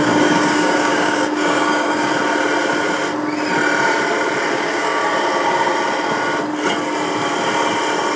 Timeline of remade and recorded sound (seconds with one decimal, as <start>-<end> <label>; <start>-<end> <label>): 0.0-2.1 remade; 2.1-4.5 recorded; 4.5-5.0 remade; 5.0-8.2 recorded